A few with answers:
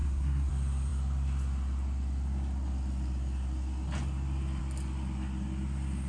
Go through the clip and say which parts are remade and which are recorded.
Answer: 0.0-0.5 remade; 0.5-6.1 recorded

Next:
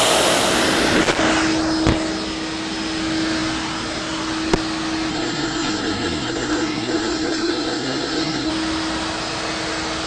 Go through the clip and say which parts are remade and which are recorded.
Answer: 0.0-5.1 recorded; 5.1-8.5 remade; 8.5-10.1 recorded

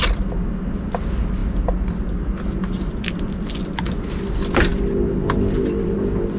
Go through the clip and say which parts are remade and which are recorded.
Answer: 0.0-6.4 recorded